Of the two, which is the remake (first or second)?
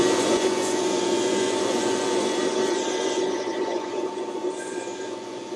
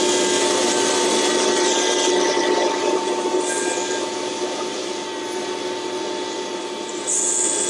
first